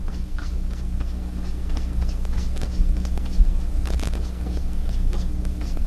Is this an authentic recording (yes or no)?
no